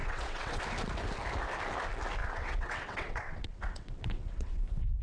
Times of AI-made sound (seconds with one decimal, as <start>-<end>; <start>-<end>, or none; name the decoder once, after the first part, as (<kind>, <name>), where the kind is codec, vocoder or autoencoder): 0.0-0.6 (vocoder, WaveNeXt); 2.2-4.6

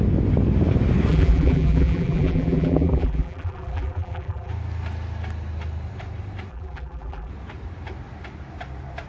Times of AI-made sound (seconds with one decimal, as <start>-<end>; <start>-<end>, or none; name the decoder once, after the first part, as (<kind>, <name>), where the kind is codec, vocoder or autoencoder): 1.1-4.5 (vocoder, BigVGAN v2); 6.5-7.3

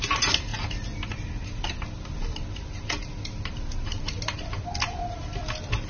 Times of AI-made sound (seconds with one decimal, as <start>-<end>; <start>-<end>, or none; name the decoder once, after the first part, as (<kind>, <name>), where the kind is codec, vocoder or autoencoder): none

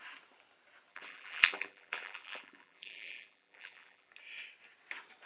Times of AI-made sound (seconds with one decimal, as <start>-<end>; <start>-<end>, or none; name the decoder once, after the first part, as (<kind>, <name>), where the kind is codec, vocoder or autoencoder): 0.9-4.1 (vocoder, BigVGAN v2)

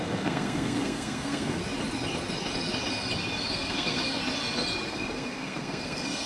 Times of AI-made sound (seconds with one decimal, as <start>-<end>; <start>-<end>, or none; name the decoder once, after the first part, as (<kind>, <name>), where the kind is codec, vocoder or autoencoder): 0.0-1.6 (codec, SNAC); 3.5-4.2; 4.9-6.3

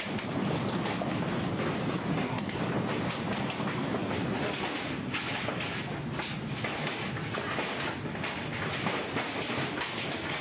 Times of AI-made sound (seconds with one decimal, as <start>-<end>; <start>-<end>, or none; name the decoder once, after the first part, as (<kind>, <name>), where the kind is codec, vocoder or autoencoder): 2.1-2.6 (codec, SNAC)